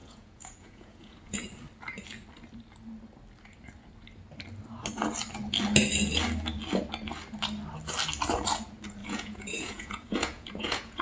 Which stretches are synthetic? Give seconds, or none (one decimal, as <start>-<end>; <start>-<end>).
0.0-1.4; 9.0-11.0